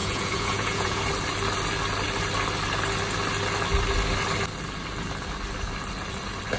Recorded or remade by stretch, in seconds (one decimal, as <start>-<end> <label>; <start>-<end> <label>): 0.0-1.0 remade; 1.0-6.6 recorded